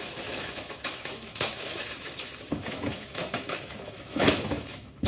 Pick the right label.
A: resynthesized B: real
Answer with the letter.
A